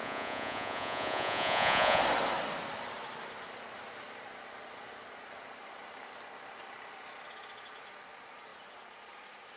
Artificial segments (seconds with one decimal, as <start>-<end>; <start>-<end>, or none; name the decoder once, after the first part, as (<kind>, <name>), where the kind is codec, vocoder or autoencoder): 0.0-2.0 (vocoder, Vocos)